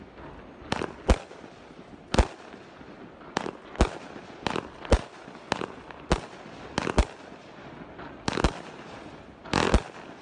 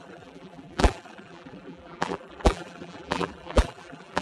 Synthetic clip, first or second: second